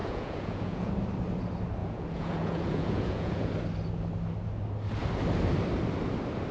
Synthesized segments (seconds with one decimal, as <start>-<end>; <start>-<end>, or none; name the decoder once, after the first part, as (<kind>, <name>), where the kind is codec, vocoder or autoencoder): 0.0-0.9 (vocoder, Vocos); 1.8-3.5